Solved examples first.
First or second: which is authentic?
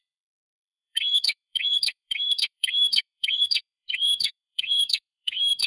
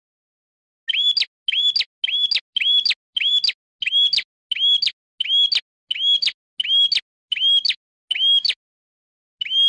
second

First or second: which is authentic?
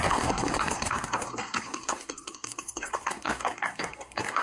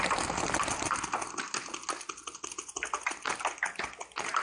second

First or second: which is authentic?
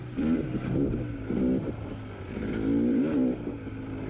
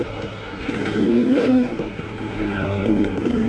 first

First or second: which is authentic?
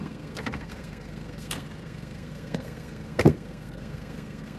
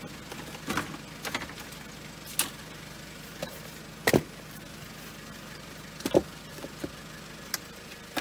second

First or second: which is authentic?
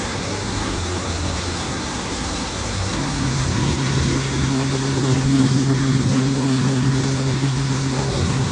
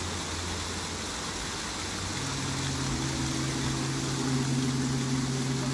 second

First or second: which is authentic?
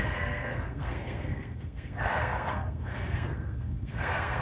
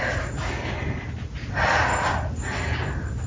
second